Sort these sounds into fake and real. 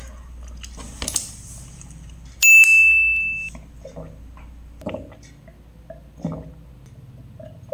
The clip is real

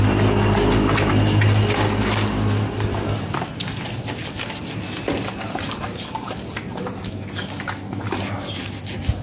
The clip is real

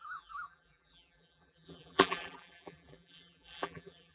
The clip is fake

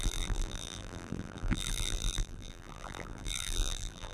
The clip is fake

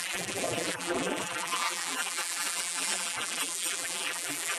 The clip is fake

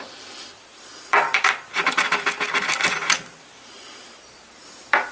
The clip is fake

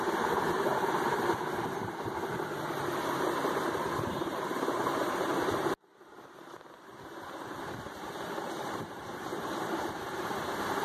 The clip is fake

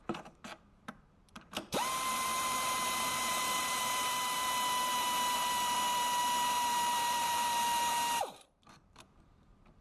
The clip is fake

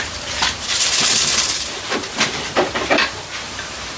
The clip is fake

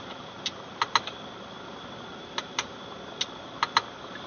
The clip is real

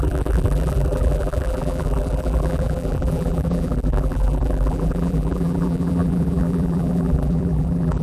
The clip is fake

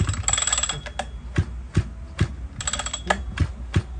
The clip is real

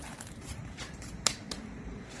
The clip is fake